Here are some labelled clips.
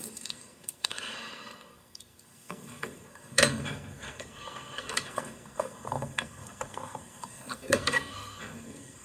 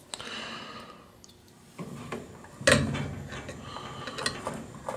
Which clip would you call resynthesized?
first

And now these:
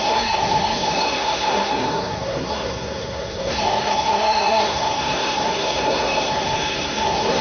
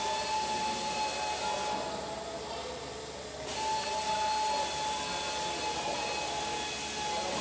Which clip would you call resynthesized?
first